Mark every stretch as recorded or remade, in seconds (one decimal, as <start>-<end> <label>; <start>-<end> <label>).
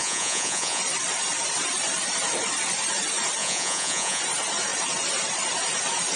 0.0-0.8 remade; 0.8-3.4 recorded; 3.4-4.2 remade; 4.2-6.2 recorded